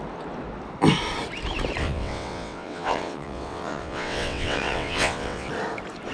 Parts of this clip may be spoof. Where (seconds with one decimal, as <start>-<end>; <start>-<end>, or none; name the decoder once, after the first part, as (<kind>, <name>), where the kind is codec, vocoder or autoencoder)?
1.8-5.5 (vocoder, WaveNeXt)